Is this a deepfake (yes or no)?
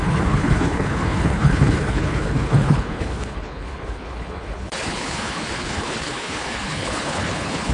yes